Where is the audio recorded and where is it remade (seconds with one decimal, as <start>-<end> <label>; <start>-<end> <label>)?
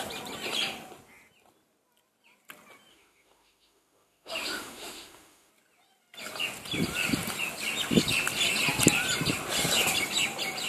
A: 0.0-2.9 recorded; 2.9-5.5 remade; 5.5-10.7 recorded